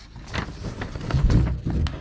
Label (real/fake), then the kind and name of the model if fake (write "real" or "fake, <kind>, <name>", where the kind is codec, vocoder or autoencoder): real